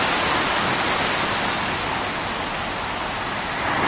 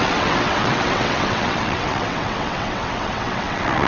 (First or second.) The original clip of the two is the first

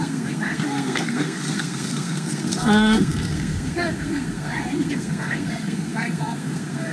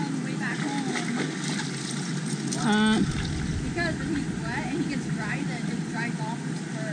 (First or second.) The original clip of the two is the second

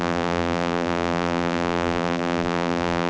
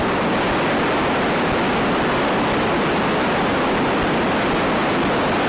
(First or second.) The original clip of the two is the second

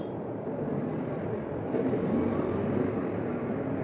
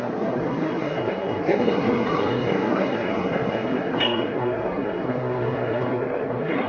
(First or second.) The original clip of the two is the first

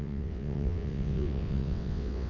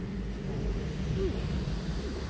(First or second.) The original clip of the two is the second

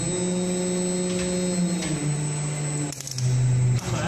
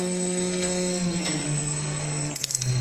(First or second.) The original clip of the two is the first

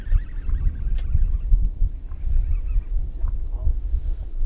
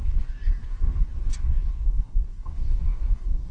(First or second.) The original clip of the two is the first